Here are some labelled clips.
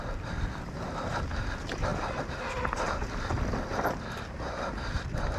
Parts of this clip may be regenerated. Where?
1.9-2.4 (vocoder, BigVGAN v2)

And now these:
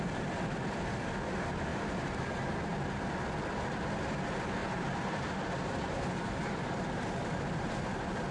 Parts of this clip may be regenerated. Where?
1.7-2.2 (vocoder, BigVGAN v2); 4.6-6.8

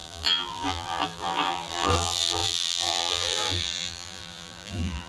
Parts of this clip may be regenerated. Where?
0.0-5.1 (vocoder, BigVGAN v2)

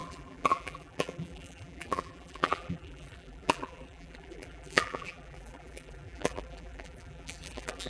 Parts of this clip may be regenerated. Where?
0.0-7.9 (vocoder, BigVGAN v2)

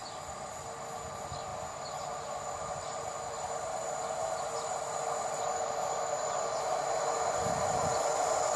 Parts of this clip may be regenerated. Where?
0.0-1.0 (vocoder, BigVGAN v2); 1.5-3.1

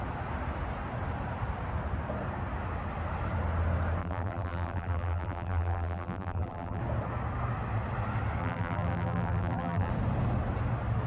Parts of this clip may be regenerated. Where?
4.0-6.8 (vocoder, BigVGAN v2); 8.4-9.9

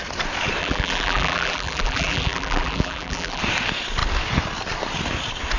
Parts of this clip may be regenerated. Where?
0.6-3.4 (vocoder, BigVGAN v2)